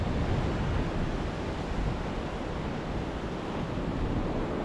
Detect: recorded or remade recorded